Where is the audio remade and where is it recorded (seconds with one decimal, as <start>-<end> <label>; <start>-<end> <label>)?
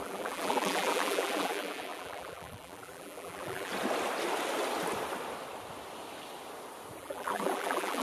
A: 0.0-3.7 remade; 3.7-7.0 recorded; 7.0-8.0 remade